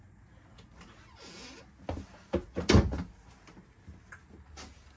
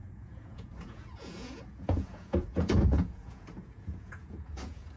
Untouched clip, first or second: first